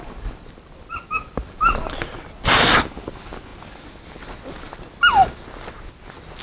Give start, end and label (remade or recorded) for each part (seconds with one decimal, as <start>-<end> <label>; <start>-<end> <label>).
0.0-6.4 recorded